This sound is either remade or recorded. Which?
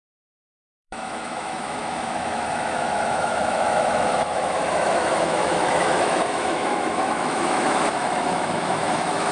remade